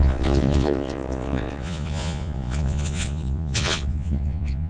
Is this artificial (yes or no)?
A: yes